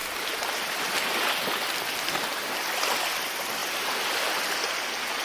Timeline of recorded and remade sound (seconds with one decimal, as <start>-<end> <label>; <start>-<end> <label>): 0.0-5.2 recorded